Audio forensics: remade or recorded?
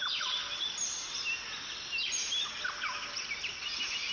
recorded